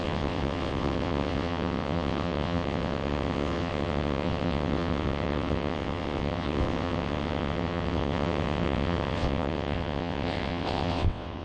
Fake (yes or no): yes